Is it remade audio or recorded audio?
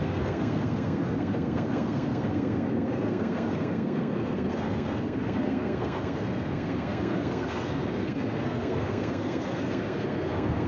remade